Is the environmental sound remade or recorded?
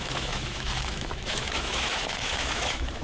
remade